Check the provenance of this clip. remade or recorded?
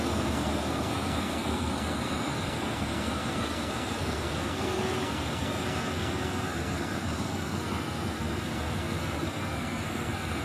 remade